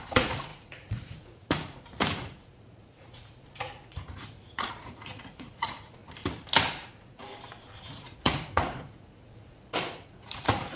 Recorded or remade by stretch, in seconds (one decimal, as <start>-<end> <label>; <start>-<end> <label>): 0.0-6.0 remade; 6.0-6.7 recorded; 6.7-7.2 remade; 7.2-7.8 recorded; 7.8-10.8 remade